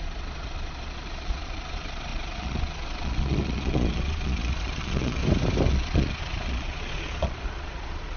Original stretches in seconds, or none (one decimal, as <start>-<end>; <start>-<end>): 5.2-5.7